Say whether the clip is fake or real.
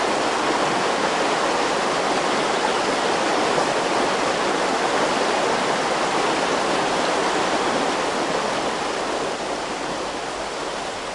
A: real